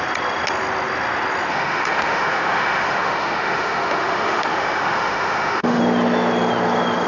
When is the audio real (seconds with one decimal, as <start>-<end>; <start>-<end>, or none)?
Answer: 0.0-1.5; 5.8-7.1